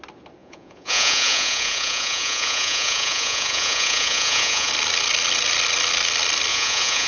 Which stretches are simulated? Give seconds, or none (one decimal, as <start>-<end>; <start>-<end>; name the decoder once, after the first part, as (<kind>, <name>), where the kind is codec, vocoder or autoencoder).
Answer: 0.4-4.7 (vocoder, Vocos); 6.5-7.1